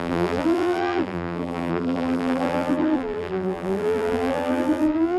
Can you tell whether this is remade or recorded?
remade